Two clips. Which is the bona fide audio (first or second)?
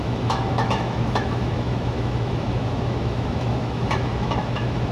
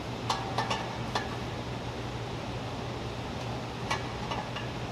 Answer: second